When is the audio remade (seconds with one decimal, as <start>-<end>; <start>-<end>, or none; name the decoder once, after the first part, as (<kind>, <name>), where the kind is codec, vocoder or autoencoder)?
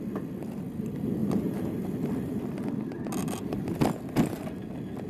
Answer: none